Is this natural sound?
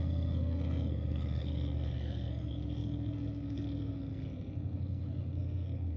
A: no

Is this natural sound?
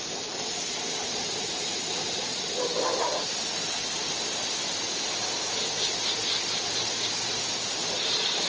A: yes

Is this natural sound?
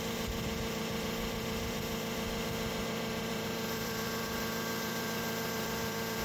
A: no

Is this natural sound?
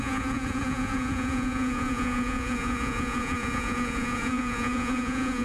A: no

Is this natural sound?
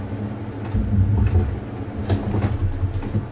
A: yes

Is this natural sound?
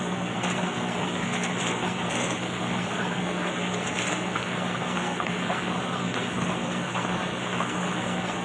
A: no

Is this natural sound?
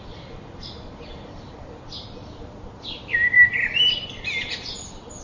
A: yes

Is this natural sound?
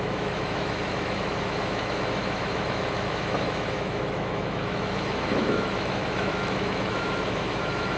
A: no